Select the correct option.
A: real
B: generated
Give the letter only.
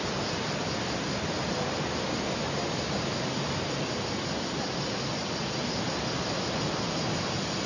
A